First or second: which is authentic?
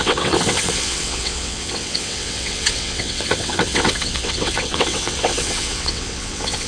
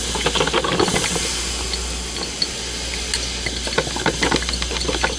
second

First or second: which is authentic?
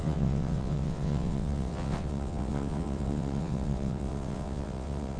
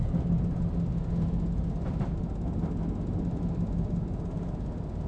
second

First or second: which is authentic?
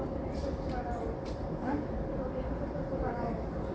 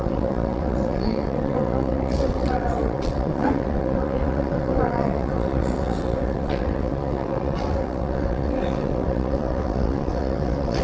first